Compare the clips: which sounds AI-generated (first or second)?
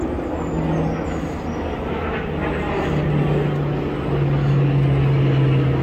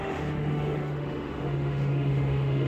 second